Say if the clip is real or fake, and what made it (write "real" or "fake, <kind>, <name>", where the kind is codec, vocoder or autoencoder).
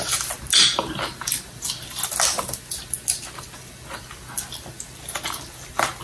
real